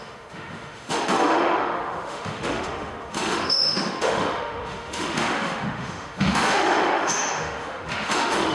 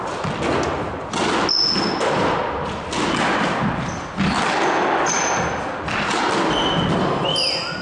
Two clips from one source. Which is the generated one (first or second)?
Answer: first